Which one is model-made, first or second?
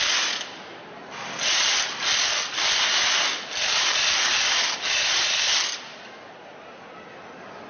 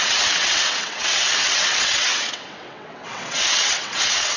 second